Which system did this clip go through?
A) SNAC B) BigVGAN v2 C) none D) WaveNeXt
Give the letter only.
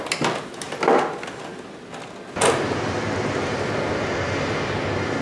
C